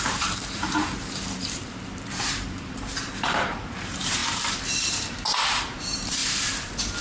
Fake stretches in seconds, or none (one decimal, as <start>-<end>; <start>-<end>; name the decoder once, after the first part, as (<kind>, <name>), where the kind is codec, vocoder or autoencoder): 0.0-6.2 (vocoder, BigVGAN v2)